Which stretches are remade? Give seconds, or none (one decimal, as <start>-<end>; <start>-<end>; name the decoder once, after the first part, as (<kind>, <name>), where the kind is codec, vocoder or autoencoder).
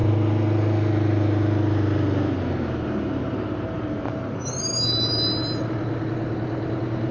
none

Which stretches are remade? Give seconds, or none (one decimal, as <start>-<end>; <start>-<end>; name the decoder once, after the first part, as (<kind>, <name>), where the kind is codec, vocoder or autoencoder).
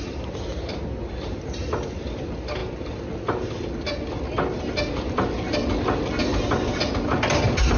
none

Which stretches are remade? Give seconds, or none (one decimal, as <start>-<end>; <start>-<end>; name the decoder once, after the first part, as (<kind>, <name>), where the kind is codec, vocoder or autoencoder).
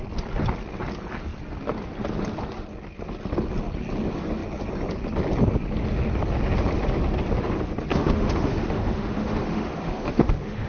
7.9-10.7 (autoencoder, DAC-VAE)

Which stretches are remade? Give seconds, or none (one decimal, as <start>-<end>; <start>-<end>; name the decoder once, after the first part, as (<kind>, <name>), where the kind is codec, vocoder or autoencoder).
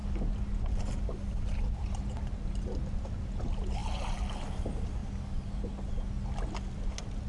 none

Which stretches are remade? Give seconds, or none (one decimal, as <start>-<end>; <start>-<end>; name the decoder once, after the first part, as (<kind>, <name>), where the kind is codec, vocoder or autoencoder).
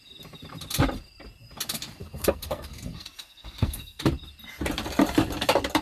2.0-4.0 (codec, SNAC)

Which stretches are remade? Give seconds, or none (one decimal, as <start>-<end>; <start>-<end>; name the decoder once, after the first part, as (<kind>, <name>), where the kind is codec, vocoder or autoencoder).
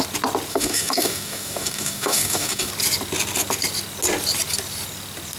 0.5-2.7 (codec, DAC)